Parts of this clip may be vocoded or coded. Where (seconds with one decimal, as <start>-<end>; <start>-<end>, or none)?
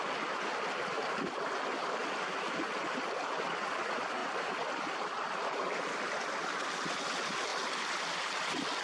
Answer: 4.2-5.3; 7.5-8.3